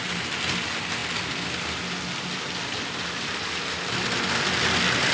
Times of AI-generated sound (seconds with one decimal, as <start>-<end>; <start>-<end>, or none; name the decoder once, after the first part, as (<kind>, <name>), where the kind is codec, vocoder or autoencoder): none